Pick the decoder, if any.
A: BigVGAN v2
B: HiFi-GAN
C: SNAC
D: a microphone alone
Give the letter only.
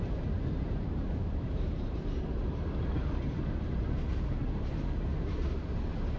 D